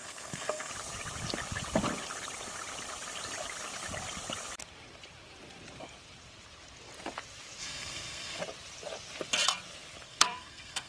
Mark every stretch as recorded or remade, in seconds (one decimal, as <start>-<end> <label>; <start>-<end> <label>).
0.0-0.7 remade; 0.7-7.6 recorded; 7.6-8.4 remade; 8.4-10.1 recorded; 10.1-10.9 remade